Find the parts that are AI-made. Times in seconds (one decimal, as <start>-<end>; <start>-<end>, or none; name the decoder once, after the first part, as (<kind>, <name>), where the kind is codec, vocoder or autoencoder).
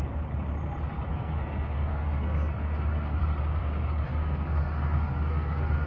1.1-3.2 (codec, SNAC); 3.6-5.9